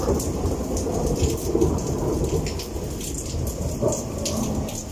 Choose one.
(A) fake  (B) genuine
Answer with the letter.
B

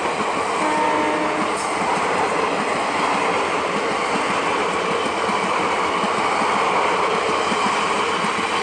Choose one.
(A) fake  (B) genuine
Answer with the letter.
B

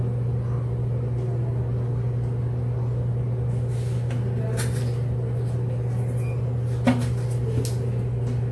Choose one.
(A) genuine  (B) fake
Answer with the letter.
A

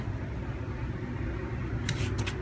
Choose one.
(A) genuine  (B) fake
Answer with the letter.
A